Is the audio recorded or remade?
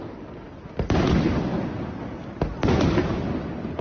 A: recorded